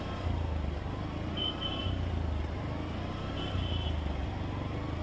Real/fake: real